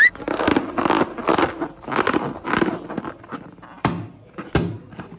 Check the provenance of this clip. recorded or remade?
recorded